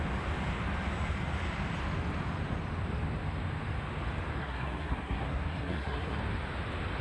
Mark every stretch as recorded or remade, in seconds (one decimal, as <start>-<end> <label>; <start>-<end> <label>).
0.0-4.4 recorded; 4.4-6.2 remade; 6.2-7.0 recorded